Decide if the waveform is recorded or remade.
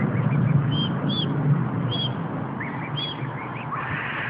recorded